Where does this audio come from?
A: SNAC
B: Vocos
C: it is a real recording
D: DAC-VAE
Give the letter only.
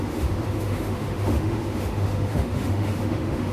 D